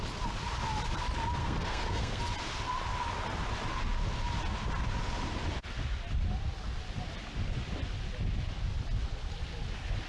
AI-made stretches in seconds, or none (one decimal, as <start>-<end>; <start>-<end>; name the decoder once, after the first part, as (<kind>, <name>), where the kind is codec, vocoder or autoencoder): 1.4-2.2 (codec, SNAC)